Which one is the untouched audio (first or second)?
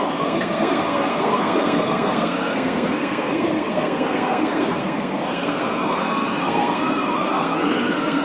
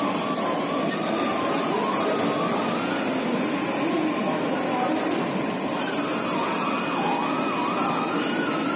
second